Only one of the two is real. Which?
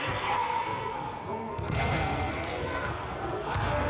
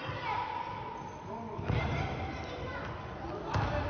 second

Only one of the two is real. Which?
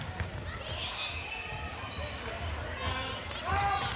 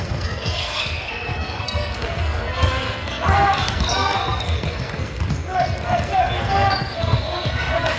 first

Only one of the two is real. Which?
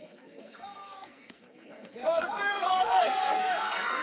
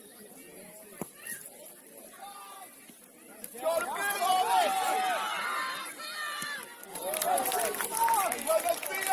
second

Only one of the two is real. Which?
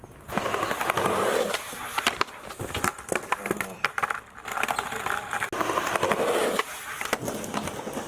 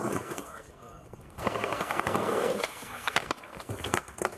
first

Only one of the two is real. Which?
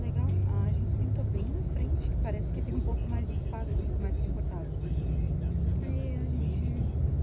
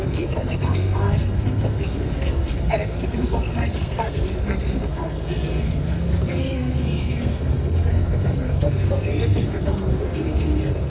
first